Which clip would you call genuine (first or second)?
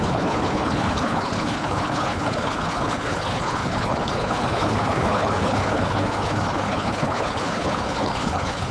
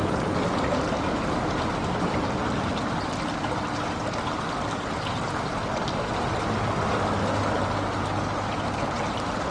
second